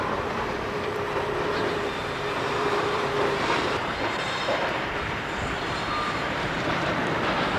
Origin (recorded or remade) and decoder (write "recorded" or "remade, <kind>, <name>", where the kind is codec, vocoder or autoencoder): remade, vocoder, BigVGAN v2